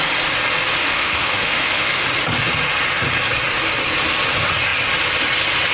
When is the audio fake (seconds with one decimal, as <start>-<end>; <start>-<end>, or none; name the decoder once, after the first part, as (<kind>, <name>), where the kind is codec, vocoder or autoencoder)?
0.8-2.0 (autoencoder, DAC-VAE)